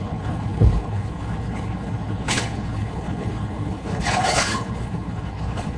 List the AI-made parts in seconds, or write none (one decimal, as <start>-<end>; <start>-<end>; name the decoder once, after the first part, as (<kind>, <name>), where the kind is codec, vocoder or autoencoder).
0.0-5.8 (codec, HILCodec)